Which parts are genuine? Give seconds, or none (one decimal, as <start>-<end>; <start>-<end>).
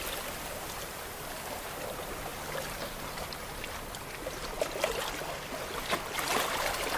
0.0-2.3; 3.9-7.0